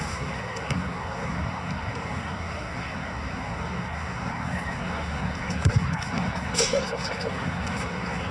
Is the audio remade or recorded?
remade